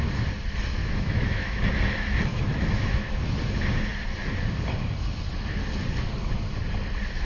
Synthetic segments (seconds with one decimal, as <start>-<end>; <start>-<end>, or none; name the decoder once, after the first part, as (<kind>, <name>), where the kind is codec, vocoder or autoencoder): 0.8-1.6 (autoencoder, DAC-VAE); 2.3-3.1